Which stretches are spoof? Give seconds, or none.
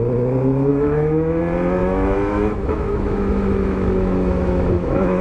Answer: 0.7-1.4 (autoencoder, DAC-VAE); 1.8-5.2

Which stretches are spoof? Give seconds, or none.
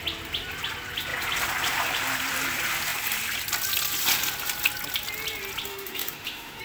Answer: 5.7-6.6 (autoencoder, DAC-VAE)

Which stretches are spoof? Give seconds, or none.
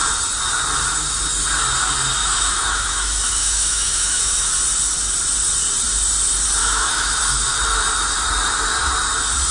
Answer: 2.2-4.5 (autoencoder, DAC-VAE); 6.6-7.2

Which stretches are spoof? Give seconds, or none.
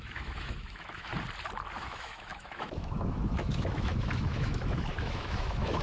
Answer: 0.0-1.1 (autoencoder, DAC-VAE); 1.8-5.8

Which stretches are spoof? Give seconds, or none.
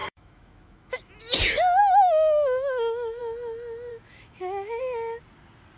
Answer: 0.0-1.1 (autoencoder, DAC-VAE); 1.8-3.2; 3.9-4.8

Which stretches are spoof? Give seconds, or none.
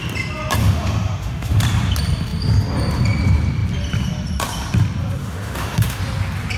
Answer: 0.6-1.6 (autoencoder, DAC-VAE); 5.2-6.0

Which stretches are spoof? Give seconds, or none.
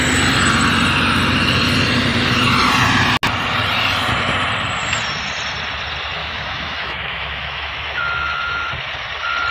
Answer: 6.2-8.7 (autoencoder, DAC-VAE)